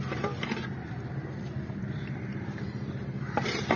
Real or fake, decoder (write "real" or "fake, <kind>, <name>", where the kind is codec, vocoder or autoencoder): fake, vocoder, BigVGAN v2